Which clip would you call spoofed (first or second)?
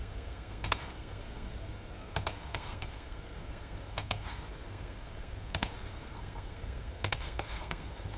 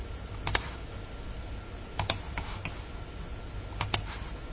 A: first